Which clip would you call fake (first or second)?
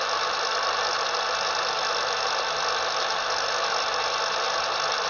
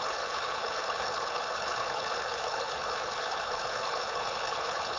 second